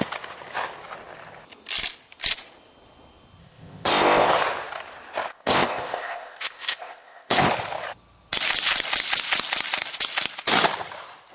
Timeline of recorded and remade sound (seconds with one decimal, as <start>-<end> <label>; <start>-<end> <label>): 0.0-3.4 recorded; 3.4-4.3 remade; 4.3-5.3 recorded; 5.3-7.5 remade; 7.5-11.3 recorded